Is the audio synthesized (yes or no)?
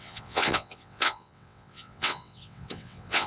yes